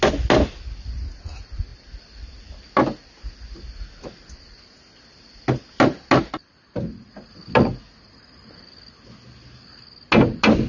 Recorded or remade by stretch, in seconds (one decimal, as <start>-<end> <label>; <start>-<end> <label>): 0.0-10.7 recorded